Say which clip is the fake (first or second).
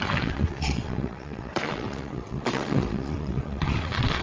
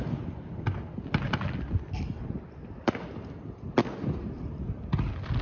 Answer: first